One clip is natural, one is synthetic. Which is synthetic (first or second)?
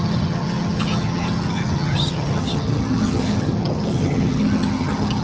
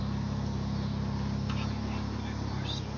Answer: first